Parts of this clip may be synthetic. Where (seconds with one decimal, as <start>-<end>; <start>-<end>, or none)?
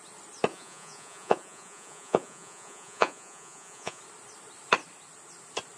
0.5-4.0